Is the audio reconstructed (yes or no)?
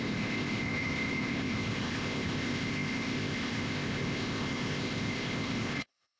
yes